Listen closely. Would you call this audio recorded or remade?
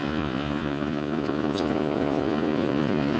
remade